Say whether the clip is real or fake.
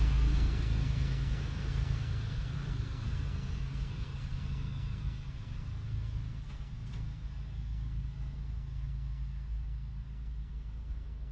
fake